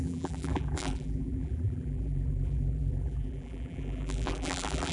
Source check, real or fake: fake